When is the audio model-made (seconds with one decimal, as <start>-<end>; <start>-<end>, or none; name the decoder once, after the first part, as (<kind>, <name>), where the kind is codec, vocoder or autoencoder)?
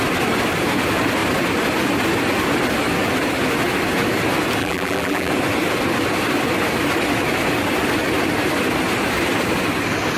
4.6-5.3 (vocoder, BigVGAN v2)